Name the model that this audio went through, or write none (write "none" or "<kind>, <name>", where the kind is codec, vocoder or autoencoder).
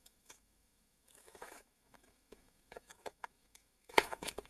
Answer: autoencoder, DAC-VAE